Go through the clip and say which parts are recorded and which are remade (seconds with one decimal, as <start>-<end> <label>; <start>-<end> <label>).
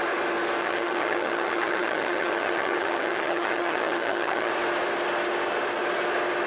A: 0.0-0.6 recorded; 0.6-4.5 remade; 4.5-6.5 recorded